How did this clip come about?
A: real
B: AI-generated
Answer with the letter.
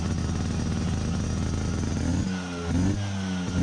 A